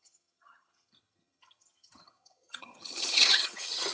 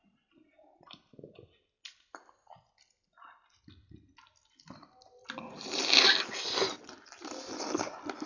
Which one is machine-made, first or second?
first